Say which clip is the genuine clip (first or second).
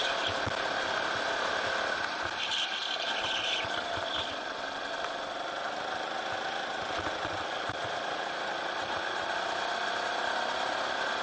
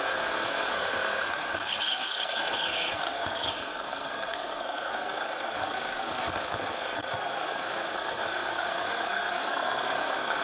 first